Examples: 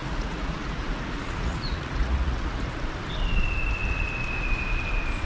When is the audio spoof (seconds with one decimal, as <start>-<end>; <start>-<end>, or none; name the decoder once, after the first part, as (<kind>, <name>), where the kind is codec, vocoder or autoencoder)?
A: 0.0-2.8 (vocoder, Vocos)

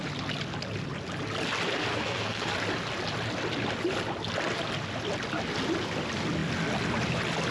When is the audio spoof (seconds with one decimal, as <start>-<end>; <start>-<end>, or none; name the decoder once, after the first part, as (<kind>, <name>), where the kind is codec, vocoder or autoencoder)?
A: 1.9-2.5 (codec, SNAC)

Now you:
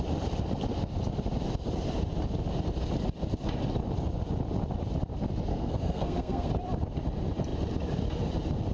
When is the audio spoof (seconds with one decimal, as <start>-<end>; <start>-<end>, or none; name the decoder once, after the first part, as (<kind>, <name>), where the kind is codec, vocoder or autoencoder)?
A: 5.5-6.5 (codec, SNAC)